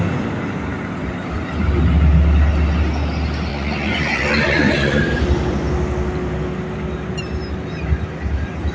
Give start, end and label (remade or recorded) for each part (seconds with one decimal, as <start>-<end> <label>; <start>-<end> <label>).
0.0-3.5 recorded; 3.5-5.0 remade; 5.0-8.7 recorded